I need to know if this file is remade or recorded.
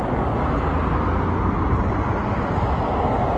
recorded